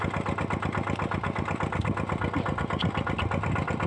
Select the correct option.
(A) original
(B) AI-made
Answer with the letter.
A